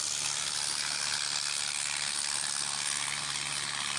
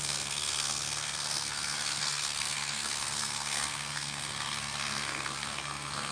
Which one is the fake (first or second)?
second